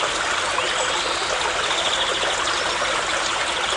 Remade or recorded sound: recorded